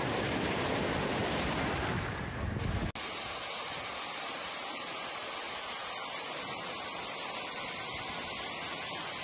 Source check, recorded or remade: recorded